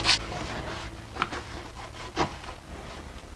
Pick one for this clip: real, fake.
real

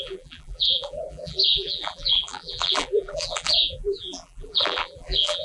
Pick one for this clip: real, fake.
fake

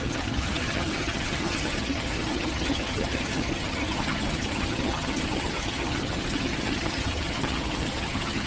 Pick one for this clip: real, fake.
fake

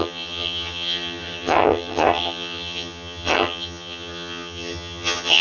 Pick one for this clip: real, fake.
fake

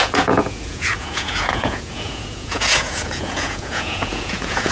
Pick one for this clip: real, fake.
fake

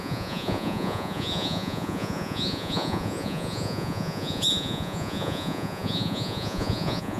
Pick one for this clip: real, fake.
fake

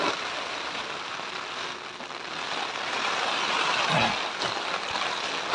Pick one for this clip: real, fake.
real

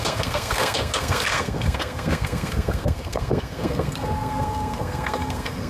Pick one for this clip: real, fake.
fake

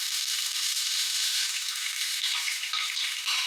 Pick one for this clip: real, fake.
fake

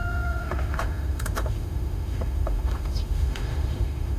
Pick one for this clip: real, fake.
fake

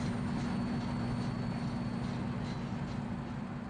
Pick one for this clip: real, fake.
real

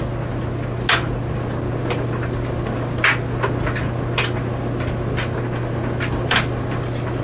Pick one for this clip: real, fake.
real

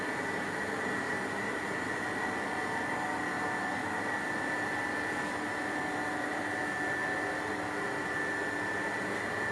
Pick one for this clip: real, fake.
real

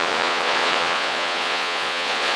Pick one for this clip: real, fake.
fake